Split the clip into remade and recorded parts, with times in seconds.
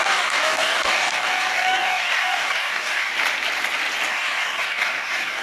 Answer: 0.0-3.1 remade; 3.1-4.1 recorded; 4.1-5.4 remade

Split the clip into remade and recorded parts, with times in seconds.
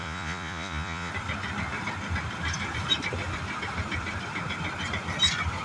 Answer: 0.0-1.1 remade; 1.1-5.6 recorded